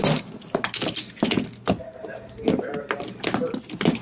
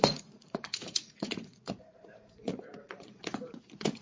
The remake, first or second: second